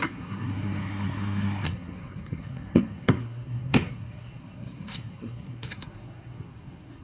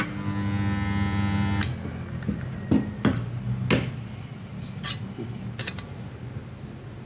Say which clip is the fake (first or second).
first